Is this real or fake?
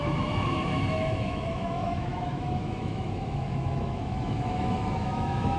fake